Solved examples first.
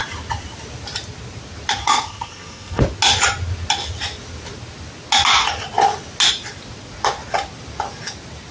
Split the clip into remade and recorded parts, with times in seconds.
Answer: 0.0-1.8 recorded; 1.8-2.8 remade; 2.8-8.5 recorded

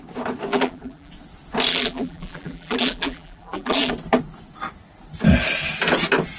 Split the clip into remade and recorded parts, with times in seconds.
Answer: 0.0-0.5 recorded; 0.5-1.1 remade; 1.1-1.7 recorded; 1.7-3.9 remade; 3.9-6.4 recorded